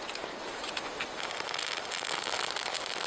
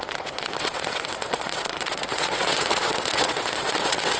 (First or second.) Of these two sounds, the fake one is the second